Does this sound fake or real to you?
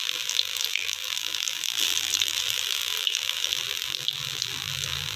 fake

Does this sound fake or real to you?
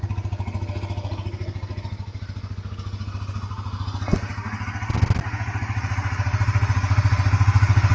real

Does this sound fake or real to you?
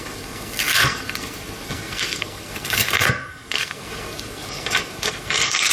fake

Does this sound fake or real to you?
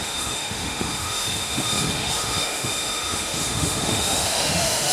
fake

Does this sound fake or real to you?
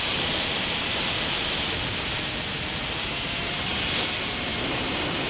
fake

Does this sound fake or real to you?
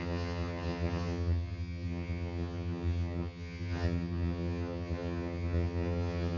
fake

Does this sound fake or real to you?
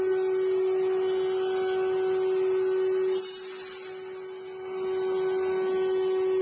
real